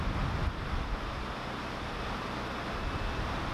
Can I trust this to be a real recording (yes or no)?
yes